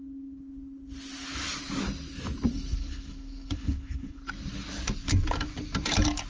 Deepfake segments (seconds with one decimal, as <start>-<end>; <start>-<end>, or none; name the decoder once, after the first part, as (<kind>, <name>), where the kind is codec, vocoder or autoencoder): 2.5-4.2 (codec, HILCodec)